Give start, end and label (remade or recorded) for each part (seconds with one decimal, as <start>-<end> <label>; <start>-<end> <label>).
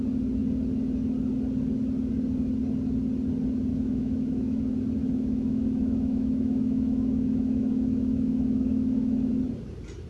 0.0-3.7 recorded; 3.7-4.6 remade; 4.6-5.0 recorded; 5.0-9.3 remade; 9.3-10.1 recorded